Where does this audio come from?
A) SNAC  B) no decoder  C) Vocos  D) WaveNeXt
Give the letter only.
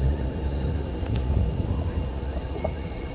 C